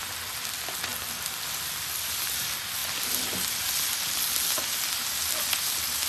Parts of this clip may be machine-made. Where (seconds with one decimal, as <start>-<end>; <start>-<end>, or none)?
none